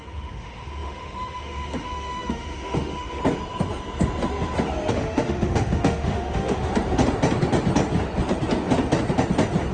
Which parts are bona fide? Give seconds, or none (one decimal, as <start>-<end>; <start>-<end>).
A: 3.2-4.9; 6.7-9.7